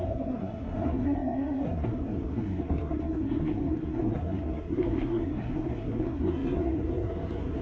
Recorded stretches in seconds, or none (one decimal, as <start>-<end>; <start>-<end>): none

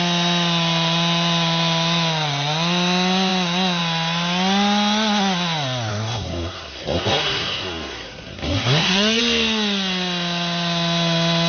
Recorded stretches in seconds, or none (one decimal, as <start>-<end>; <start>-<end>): 0.0-5.9; 9.2-11.5

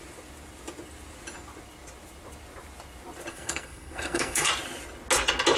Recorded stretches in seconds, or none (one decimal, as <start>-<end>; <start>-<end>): 0.0-3.3; 4.5-5.6

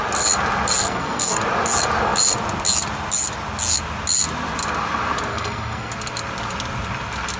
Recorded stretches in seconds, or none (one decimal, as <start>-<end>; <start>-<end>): 0.0-0.8; 1.4-5.3; 5.9-7.4

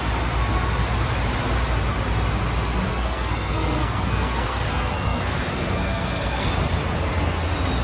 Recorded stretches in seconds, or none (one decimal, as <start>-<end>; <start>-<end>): 0.0-2.9; 6.5-7.8

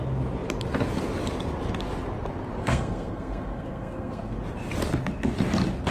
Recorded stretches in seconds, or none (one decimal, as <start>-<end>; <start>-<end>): 0.0-2.6; 4.4-5.9